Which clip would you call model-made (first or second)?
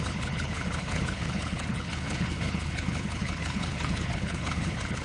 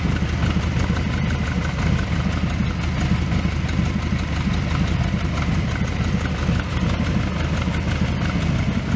first